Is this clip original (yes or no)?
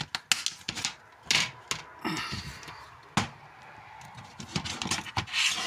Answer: yes